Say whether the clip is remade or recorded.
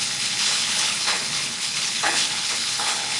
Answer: remade